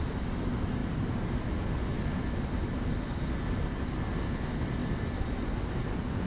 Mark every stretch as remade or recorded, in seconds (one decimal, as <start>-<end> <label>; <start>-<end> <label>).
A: 0.0-6.3 recorded